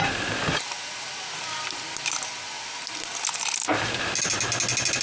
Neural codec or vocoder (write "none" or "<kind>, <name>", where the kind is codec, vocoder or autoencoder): none